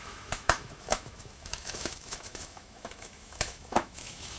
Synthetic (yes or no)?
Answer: yes